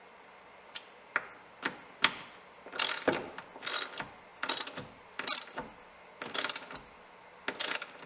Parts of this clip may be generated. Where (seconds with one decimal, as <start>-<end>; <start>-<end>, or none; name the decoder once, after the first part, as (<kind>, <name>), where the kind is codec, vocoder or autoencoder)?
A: none